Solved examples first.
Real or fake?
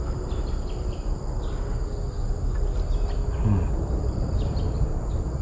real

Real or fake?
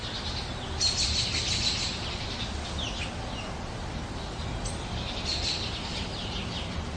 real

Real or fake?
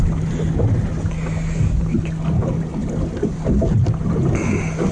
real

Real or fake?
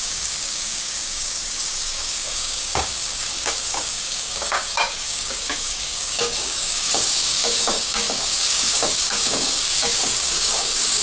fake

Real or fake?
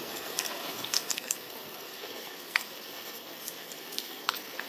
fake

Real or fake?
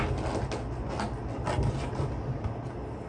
real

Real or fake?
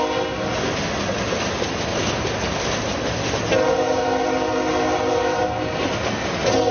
real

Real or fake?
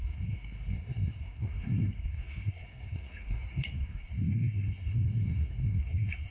fake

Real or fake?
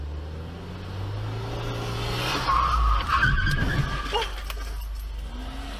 real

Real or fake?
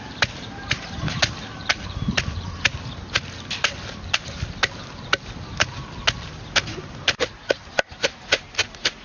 real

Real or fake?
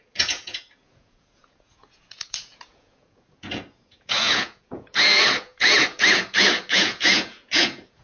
fake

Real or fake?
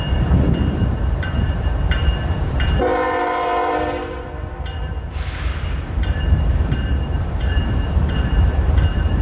fake